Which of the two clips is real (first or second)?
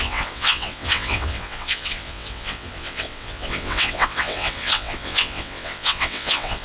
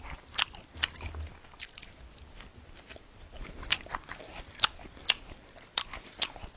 second